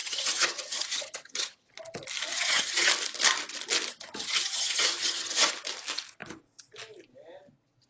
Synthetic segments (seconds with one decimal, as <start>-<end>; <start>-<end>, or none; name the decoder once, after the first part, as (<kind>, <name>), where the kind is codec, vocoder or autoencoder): 0.0-1.7 (vocoder, HiFi-GAN); 2.3-2.9; 3.9-5.5